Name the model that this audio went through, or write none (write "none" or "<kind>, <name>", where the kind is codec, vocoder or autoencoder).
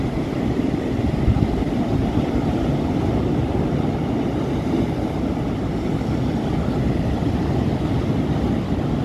none